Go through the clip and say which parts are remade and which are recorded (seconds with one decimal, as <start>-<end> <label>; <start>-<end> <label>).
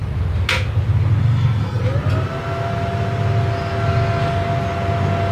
0.0-1.2 recorded; 1.2-1.8 remade; 1.8-5.3 recorded